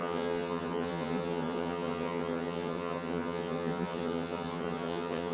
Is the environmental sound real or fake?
fake